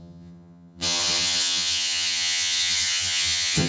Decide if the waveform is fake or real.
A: fake